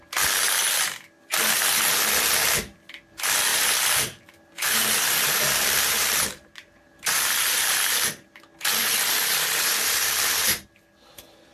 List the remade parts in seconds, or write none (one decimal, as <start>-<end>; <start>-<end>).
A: 3.5-8.4; 8.8-10.7